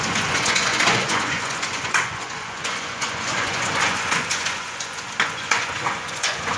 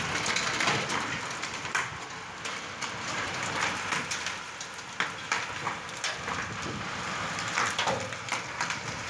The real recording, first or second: second